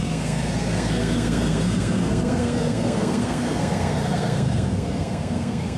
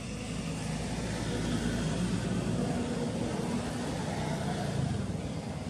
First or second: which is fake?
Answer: first